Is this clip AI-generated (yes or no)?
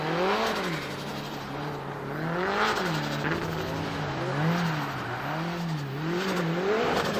no